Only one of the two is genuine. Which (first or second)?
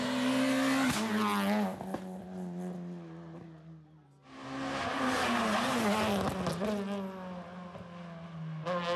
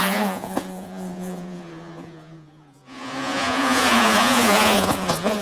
first